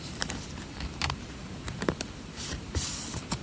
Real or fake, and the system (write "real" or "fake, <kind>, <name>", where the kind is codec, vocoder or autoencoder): fake, vocoder, BigVGAN v2